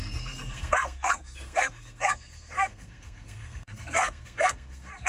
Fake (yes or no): yes